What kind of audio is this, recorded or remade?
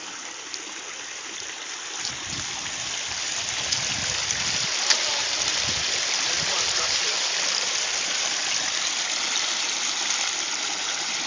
recorded